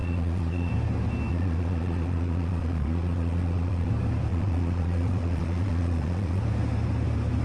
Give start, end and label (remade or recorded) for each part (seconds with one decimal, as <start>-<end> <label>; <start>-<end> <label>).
0.0-0.7 remade; 0.7-1.3 recorded; 1.3-3.9 remade; 3.9-4.3 recorded; 4.3-6.4 remade; 6.4-7.4 recorded